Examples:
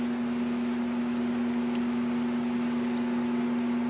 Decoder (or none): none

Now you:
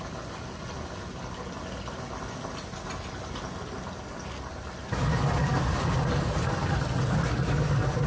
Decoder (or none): none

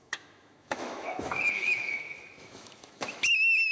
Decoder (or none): autoencoder, DAC-VAE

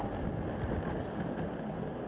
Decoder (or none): none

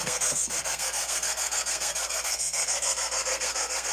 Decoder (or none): codec, SNAC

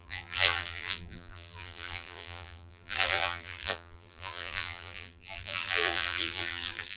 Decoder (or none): vocoder, BigVGAN v2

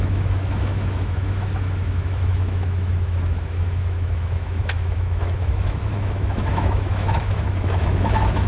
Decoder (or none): autoencoder, DAC-VAE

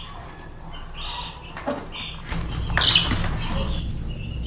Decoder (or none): none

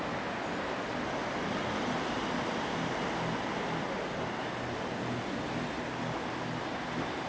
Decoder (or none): none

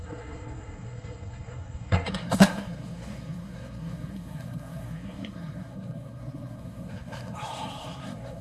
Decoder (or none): codec, SNAC